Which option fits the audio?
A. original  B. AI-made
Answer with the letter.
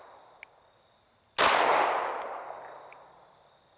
A